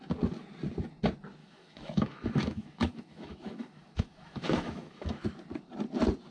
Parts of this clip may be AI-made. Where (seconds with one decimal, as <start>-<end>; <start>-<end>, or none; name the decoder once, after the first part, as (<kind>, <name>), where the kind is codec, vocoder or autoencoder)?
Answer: 1.4-5.2 (autoencoder, DAC-VAE)